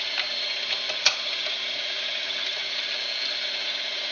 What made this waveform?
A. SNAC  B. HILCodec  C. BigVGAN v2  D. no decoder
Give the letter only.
D